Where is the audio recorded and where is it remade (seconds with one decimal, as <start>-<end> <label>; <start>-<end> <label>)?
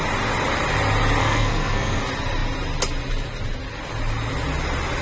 0.0-1.2 recorded; 1.2-2.0 remade; 2.0-5.0 recorded